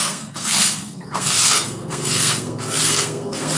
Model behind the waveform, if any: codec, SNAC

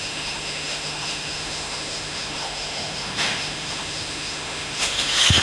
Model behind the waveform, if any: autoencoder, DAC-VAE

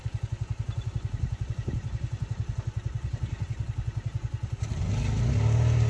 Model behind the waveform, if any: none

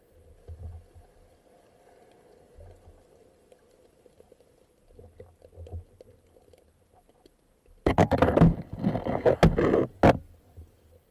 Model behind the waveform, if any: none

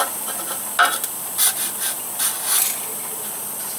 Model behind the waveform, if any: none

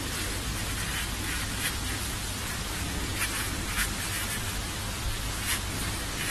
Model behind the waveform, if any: none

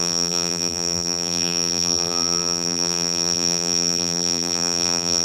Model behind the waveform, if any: vocoder, BigVGAN v2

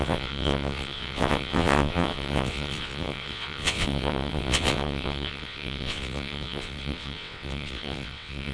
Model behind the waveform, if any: vocoder, WaveNeXt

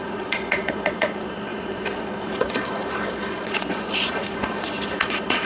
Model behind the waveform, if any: vocoder, Vocos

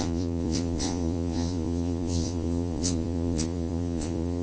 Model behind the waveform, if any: vocoder, Vocos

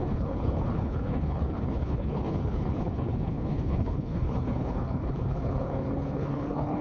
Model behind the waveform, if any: codec, HILCodec